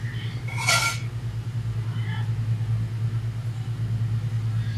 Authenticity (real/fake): real